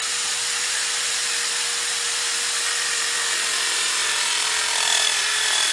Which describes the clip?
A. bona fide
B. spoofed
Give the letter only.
B